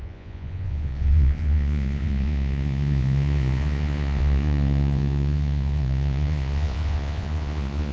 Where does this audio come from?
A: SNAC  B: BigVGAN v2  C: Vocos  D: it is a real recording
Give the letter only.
C